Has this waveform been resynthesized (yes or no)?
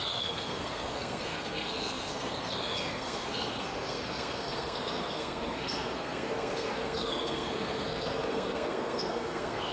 yes